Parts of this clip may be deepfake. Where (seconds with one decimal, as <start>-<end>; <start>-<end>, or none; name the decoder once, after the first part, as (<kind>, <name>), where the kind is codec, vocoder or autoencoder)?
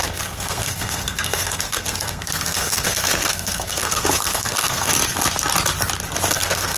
0.0-4.9 (codec, SNAC); 6.3-6.8